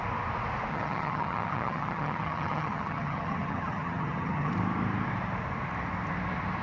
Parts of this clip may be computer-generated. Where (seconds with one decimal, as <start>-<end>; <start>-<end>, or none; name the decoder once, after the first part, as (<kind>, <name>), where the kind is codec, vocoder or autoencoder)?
0.7-4.5 (vocoder, HiFi-GAN)